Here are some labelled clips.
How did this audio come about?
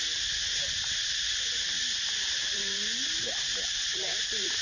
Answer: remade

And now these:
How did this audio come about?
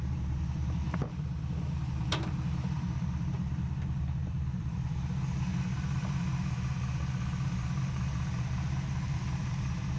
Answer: remade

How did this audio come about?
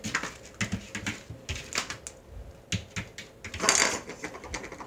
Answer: recorded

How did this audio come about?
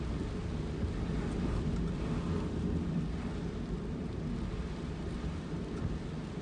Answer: recorded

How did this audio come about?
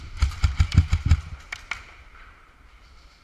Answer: recorded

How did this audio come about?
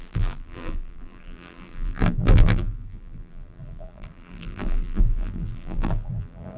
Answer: remade